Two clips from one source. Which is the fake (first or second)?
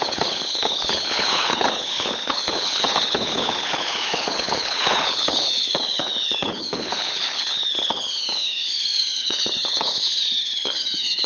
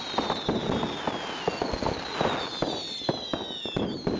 first